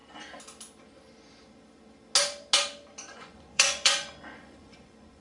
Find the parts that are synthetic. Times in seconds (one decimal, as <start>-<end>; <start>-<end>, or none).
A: 3.1-5.2